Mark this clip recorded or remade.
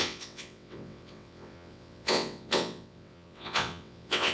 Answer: remade